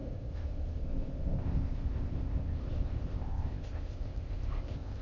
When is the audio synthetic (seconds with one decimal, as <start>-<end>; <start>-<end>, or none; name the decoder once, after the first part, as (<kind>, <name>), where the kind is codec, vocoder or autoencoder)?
0.0-5.0 (codec, ZipCodec)